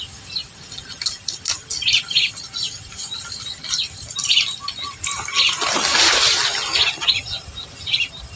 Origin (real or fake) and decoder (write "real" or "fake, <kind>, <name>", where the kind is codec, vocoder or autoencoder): real